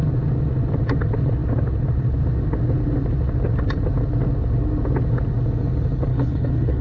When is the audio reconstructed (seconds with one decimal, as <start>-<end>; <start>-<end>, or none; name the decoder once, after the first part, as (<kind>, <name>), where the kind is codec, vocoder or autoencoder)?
6.1-6.8 (codec, HILCodec)